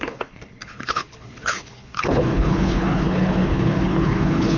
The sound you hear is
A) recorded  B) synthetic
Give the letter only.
B